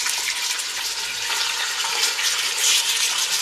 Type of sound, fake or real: real